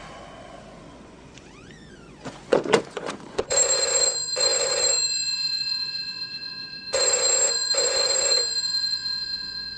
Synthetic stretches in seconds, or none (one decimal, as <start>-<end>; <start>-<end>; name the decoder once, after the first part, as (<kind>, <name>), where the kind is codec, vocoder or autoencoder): 0.0-9.8 (vocoder, Vocos)